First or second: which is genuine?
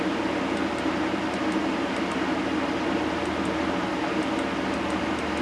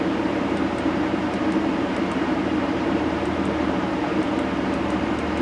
first